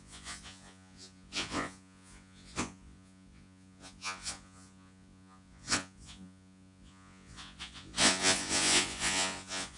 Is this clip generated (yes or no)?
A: yes